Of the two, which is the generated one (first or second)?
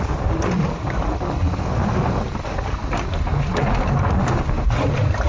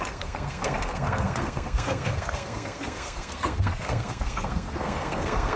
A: second